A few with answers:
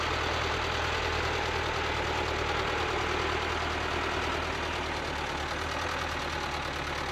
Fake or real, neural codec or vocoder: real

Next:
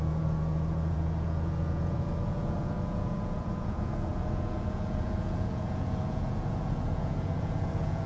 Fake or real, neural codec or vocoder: fake, vocoder, Vocos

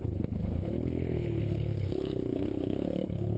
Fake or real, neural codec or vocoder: fake, codec, HILCodec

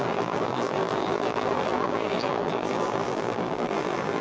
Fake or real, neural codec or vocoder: fake, vocoder, BigVGAN v2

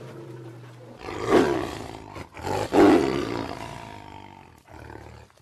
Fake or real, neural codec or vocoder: real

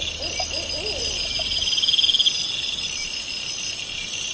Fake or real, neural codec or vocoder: real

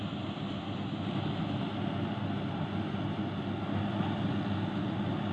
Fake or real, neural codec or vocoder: real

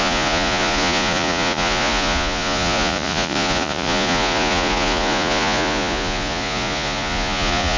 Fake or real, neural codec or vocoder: fake, vocoder, Vocos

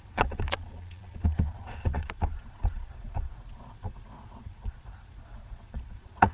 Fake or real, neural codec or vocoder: fake, vocoder, Vocos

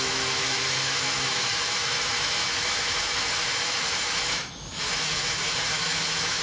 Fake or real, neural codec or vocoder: fake, autoencoder, DAC-VAE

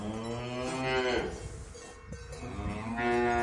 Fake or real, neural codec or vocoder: real